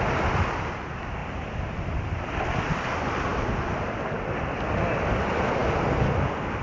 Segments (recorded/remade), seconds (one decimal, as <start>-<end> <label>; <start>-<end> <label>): 0.0-6.6 recorded